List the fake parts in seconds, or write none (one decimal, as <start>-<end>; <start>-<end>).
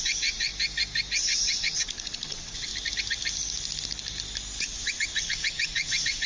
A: 0.0-0.5; 1.2-2.7; 4.6-6.3